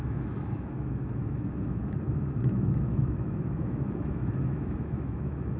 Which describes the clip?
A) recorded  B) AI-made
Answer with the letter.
B